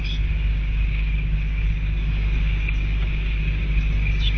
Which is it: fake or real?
fake